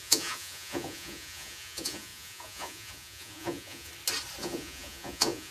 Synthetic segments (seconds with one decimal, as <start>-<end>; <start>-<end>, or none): 0.0-3.9; 4.4-5.5